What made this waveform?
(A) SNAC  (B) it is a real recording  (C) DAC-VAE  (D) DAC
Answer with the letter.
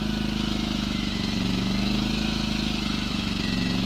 C